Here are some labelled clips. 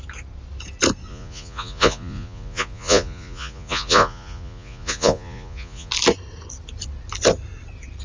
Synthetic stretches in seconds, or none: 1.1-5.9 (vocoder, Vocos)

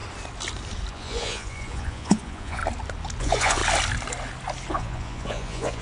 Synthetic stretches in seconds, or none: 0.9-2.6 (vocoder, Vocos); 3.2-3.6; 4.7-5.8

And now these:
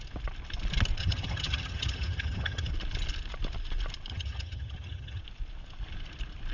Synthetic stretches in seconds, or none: 1.0-2.7 (vocoder, HiFi-GAN); 4.1-5.2

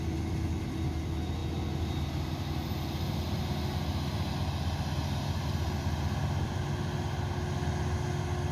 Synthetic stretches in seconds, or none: none